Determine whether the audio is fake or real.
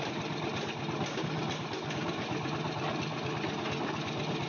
real